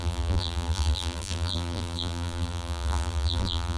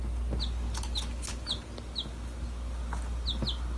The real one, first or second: second